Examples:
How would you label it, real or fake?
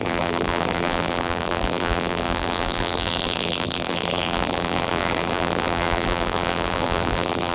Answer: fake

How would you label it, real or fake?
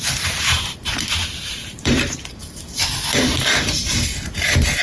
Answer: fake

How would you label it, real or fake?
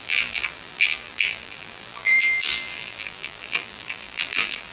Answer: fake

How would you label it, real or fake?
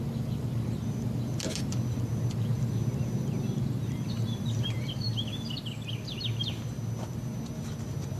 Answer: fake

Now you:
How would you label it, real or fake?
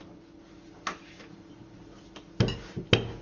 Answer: real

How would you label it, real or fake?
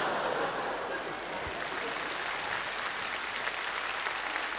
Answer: fake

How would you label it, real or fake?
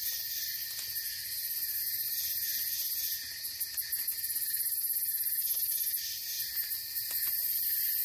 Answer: real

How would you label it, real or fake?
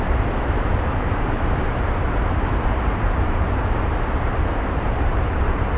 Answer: fake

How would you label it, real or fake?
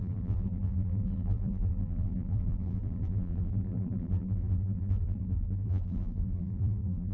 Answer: fake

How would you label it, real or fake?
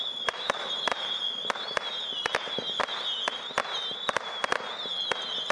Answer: real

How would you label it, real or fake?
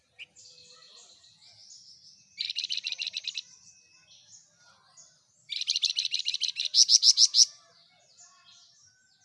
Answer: real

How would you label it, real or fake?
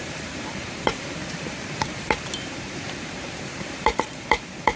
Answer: fake